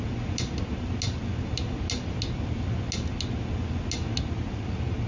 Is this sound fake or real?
real